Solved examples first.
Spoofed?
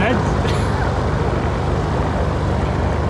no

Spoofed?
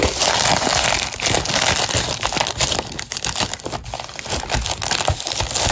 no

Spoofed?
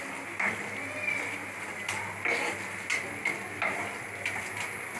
no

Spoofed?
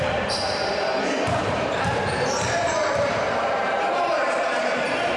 yes